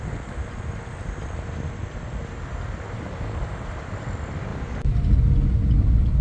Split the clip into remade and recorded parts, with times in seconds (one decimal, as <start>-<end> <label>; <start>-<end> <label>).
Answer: 0.0-6.2 recorded